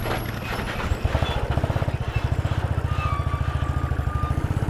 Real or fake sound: real